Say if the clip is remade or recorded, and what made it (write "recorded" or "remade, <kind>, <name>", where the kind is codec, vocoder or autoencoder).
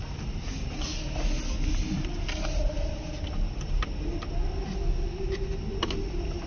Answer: recorded